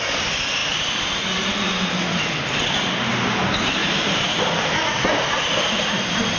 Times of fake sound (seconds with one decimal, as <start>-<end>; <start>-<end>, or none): 3.8-5.4